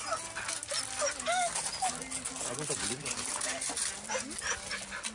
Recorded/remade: recorded